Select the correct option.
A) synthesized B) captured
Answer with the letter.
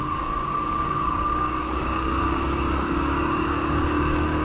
A